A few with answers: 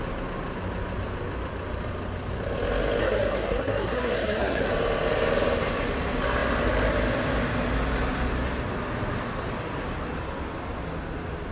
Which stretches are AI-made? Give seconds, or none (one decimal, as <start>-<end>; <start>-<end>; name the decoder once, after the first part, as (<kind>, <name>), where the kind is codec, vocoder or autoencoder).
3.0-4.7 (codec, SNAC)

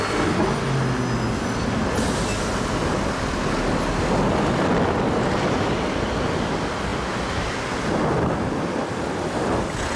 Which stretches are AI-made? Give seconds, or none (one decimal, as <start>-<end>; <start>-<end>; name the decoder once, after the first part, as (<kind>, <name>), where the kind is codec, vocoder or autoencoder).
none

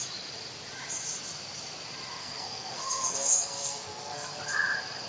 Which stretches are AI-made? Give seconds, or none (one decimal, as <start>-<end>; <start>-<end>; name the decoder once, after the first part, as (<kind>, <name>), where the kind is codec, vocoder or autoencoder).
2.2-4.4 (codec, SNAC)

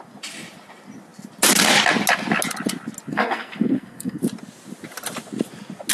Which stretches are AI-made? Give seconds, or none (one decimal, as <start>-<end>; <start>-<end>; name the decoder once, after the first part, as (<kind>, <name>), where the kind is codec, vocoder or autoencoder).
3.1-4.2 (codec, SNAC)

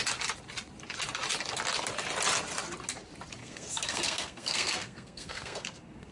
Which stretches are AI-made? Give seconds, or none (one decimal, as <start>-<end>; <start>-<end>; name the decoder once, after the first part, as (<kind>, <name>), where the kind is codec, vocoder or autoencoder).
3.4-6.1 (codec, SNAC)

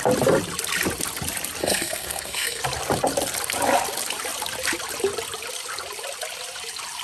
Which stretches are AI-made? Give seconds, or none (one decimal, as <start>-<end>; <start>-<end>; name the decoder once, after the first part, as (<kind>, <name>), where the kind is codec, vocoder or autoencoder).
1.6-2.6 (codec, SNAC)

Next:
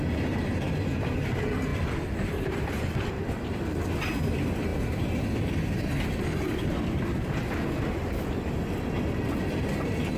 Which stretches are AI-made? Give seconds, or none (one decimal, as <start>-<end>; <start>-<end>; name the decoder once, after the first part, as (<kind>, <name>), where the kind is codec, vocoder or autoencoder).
none

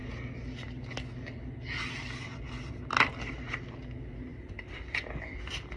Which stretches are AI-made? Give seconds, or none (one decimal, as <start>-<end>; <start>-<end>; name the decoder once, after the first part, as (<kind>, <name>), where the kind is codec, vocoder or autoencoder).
none